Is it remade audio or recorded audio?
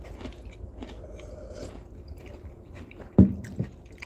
recorded